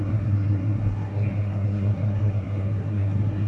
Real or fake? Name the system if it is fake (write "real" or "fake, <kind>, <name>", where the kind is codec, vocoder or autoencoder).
fake, codec, SNAC